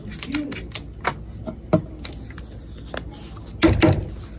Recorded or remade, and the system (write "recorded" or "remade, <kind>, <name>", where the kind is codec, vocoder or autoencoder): recorded